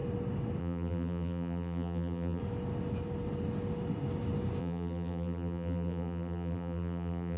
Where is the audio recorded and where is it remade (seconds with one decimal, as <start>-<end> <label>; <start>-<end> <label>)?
0.0-0.6 recorded; 0.6-2.4 remade; 2.4-4.6 recorded; 4.6-7.4 remade